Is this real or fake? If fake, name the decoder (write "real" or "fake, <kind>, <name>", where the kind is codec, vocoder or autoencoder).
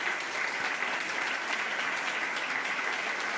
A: real